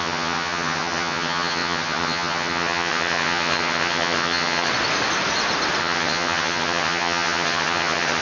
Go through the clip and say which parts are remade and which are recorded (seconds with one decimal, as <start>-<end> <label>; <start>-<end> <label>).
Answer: 0.0-4.7 remade; 4.7-5.8 recorded; 5.8-8.2 remade